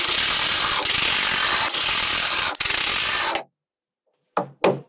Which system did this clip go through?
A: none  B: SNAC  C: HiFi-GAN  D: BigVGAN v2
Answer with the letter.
A